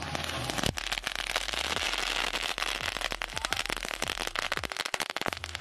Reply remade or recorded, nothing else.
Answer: recorded